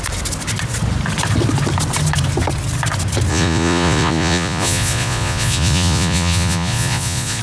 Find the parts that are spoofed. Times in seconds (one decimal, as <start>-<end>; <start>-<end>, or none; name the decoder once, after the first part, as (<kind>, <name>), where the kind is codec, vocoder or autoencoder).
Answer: 3.3-7.4 (vocoder, Vocos)